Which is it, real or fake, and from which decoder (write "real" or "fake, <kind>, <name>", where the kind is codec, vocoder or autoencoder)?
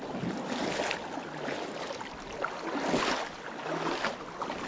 real